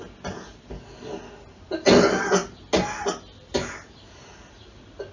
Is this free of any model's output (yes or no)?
yes